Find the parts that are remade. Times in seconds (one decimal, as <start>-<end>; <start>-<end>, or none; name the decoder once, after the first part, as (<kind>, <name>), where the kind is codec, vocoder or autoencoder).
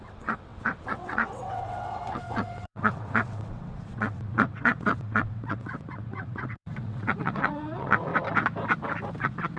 0.0-8.1 (vocoder, WaveNeXt); 9.2-9.6